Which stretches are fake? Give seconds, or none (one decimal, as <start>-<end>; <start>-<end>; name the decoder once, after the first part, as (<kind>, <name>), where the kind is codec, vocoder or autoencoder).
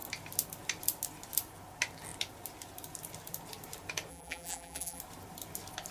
4.1-5.0 (vocoder, BigVGAN v2)